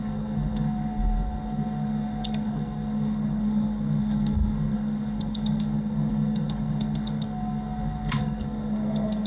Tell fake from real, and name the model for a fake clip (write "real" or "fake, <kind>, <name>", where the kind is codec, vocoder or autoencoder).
fake, codec, SNAC